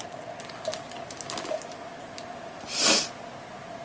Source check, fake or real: real